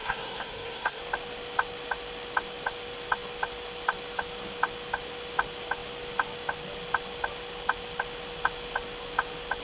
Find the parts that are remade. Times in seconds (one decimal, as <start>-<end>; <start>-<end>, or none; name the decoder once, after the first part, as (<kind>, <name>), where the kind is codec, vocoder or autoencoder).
0.0-1.0 (codec, SNAC)